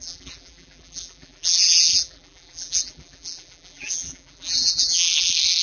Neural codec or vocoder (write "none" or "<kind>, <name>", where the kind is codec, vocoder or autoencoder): vocoder, BigVGAN v2